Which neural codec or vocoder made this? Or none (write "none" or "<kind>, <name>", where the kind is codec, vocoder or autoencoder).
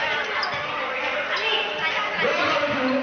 none